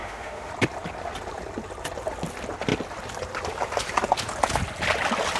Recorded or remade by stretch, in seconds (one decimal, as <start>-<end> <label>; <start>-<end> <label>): 0.0-0.5 remade; 0.5-5.4 recorded